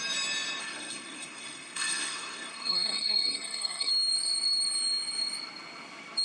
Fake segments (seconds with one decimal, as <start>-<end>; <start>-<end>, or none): 0.6-3.9